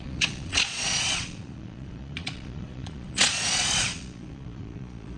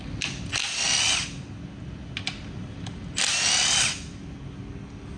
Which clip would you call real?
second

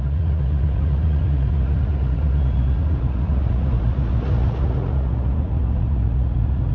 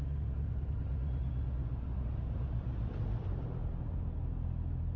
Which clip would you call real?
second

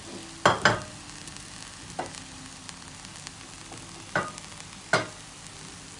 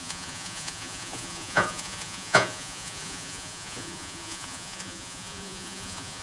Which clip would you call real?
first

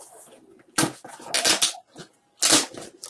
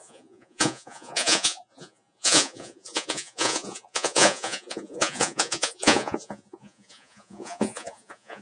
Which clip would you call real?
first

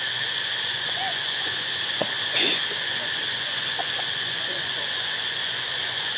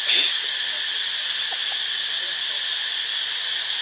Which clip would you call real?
second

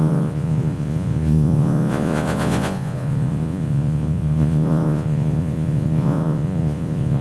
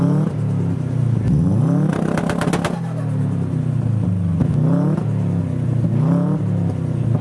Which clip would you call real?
second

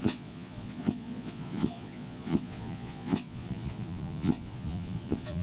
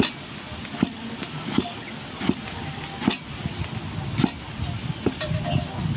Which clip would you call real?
second